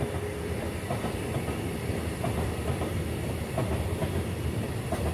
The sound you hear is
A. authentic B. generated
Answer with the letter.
A